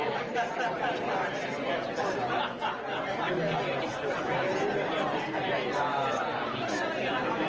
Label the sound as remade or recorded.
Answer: recorded